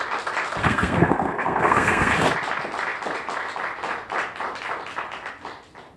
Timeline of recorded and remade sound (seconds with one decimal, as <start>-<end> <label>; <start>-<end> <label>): 0.0-0.6 recorded; 0.6-2.1 remade; 2.1-6.0 recorded